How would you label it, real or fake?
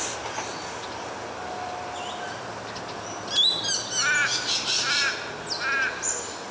real